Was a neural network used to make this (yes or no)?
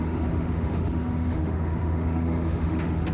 yes